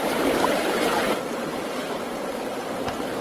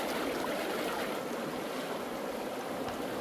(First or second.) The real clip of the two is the second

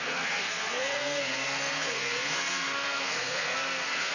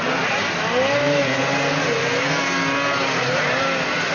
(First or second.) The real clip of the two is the second